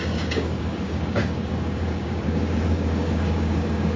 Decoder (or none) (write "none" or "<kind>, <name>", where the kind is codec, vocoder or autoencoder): codec, DAC